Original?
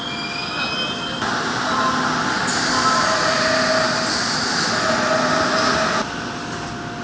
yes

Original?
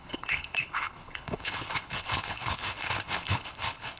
no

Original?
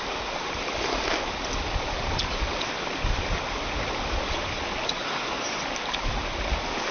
yes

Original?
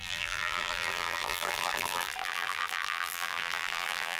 no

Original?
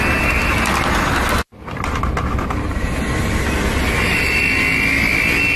yes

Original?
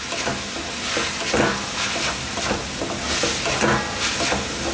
yes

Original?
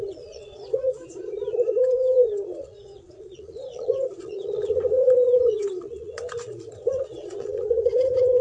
no